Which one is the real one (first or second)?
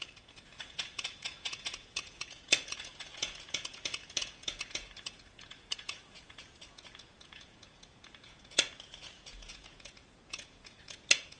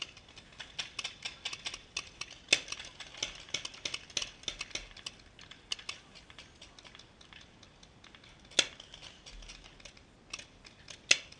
second